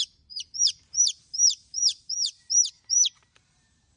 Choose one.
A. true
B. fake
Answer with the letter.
B